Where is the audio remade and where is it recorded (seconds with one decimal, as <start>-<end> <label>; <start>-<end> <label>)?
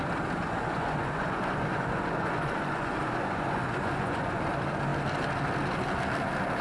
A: 0.0-0.4 recorded; 0.4-4.4 remade; 4.4-6.6 recorded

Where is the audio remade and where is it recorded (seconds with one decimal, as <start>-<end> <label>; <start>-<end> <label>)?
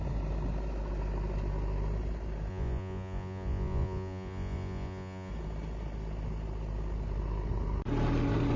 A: 0.0-2.5 recorded; 2.5-5.3 remade; 5.3-8.6 recorded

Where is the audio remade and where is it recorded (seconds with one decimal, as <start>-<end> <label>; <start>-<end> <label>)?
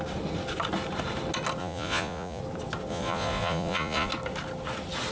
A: 0.0-1.6 recorded; 1.6-2.4 remade; 2.4-2.9 recorded; 2.9-4.1 remade; 4.1-5.1 recorded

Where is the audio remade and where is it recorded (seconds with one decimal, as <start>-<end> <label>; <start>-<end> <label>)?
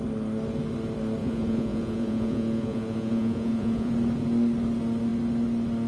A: 0.0-1.2 recorded; 1.2-3.9 remade; 3.9-5.9 recorded